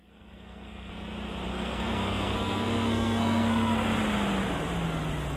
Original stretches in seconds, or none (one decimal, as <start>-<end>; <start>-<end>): 0.9-1.5; 3.9-5.4